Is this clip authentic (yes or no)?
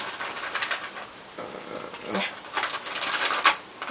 yes